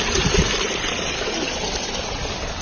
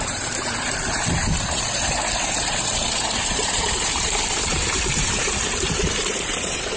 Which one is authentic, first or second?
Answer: first